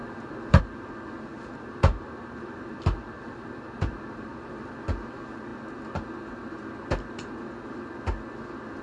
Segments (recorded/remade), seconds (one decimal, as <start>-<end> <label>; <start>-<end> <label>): 0.0-0.6 remade; 0.6-1.3 recorded; 1.3-4.8 remade; 4.8-8.8 recorded